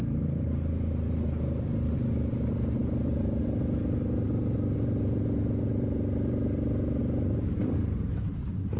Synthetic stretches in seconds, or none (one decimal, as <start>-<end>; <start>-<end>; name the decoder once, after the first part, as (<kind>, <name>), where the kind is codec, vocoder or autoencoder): 7.0-8.0 (vocoder, BigVGAN v2)